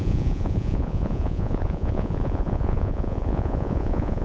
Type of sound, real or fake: fake